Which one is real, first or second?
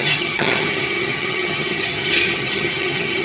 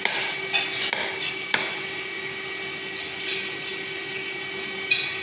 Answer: second